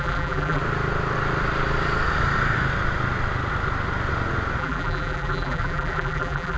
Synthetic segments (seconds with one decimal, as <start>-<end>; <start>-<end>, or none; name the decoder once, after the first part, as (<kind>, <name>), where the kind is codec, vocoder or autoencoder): 0.0-0.6 (vocoder, BigVGAN v2); 4.6-6.6

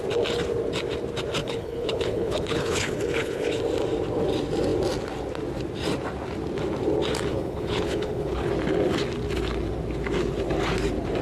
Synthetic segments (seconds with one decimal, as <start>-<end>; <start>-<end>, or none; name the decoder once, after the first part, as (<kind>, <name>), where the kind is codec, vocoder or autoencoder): 1.4-3.6 (codec, HILCodec); 7.3-8.5

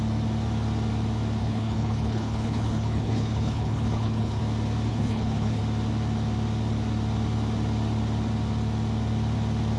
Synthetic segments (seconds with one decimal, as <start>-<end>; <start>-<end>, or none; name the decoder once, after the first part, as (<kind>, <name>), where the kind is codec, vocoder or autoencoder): 1.4-4.4 (codec, HILCodec); 4.9-5.6